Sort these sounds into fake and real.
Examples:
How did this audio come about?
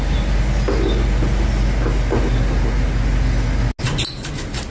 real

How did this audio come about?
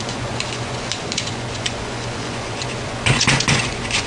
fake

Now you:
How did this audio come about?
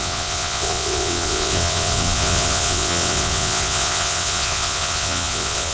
fake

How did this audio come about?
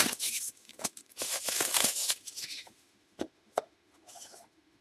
fake